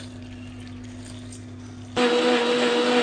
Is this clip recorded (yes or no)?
yes